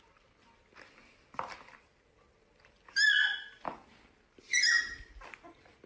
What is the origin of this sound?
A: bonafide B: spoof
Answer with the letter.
A